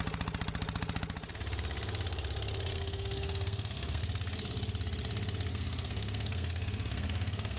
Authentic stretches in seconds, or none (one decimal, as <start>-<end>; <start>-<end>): 0.0-2.7; 4.0-5.5